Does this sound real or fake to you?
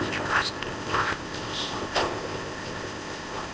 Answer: fake